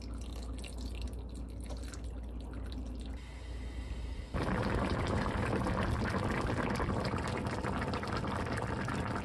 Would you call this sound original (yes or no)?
yes